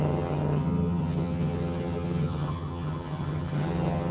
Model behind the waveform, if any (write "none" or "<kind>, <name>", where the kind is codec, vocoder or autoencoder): vocoder, HiFi-GAN